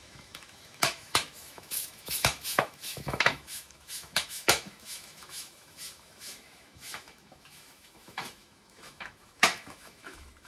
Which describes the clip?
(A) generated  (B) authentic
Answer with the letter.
A